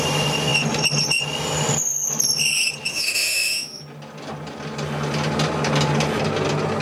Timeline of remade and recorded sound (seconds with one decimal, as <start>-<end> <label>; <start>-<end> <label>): 0.0-2.9 recorded; 2.9-3.8 remade; 3.8-6.8 recorded